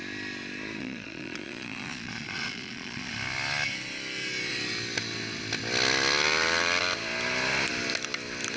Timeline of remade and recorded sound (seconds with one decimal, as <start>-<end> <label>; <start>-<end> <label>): 0.0-0.8 recorded; 0.8-3.1 remade; 3.1-8.6 recorded